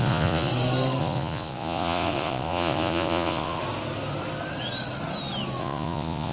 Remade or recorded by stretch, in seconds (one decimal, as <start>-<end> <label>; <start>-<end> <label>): 0.0-0.5 remade; 0.5-1.0 recorded; 1.0-3.6 remade; 3.6-5.6 recorded; 5.6-6.3 remade